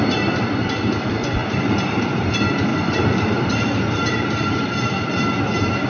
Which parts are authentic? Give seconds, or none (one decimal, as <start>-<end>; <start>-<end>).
0.0-1.4; 2.3-2.7; 5.2-5.9